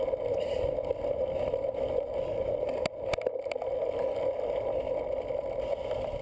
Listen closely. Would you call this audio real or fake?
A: real